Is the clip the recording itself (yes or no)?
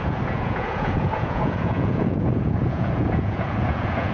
no